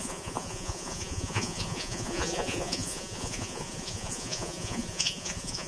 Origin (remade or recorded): remade